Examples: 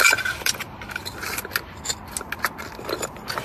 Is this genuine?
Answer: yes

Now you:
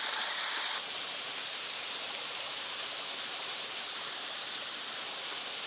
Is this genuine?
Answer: no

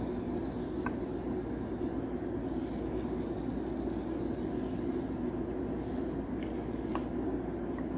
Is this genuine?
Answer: yes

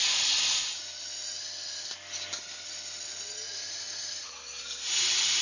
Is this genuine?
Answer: yes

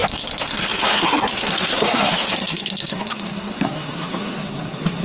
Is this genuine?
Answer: no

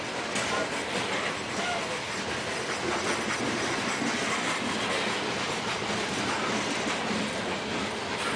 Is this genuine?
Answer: yes